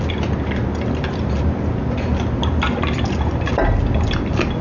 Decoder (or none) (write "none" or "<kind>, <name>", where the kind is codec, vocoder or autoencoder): none